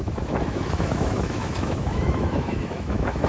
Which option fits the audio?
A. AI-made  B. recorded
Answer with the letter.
A